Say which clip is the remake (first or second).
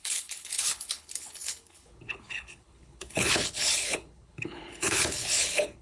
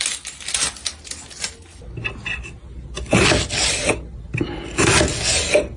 first